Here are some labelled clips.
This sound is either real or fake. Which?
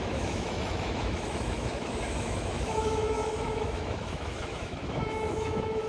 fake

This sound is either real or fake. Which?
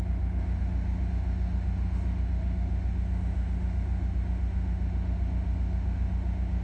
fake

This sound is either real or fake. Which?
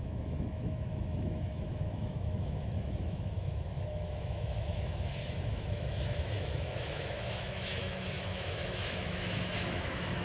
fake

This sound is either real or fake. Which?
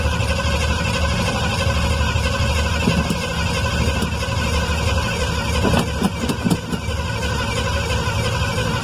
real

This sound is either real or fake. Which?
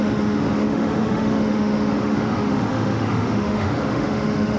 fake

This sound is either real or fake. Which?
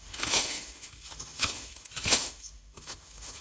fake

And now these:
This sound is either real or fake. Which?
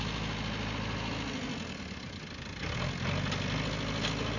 real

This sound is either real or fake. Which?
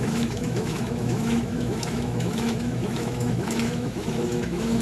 fake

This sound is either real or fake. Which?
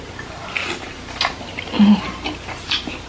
real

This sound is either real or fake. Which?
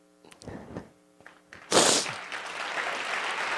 real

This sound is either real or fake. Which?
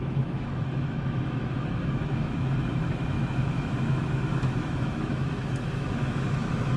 fake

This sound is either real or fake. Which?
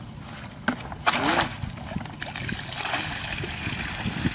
real